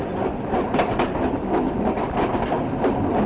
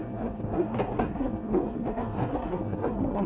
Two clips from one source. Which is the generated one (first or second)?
second